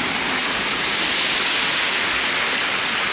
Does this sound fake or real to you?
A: real